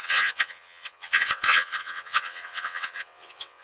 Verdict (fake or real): fake